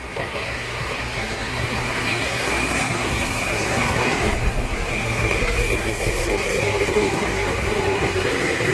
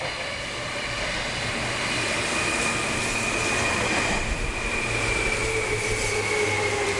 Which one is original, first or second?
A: second